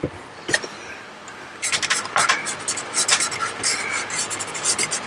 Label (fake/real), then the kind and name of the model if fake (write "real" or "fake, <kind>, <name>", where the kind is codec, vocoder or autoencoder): real